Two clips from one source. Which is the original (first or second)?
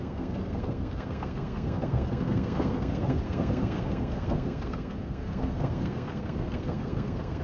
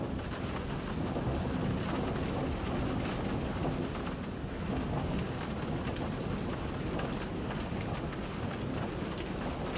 second